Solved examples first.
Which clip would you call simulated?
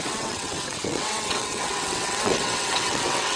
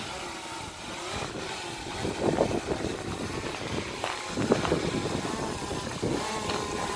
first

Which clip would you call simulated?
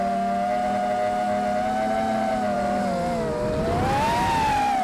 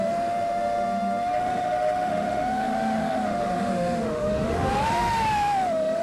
second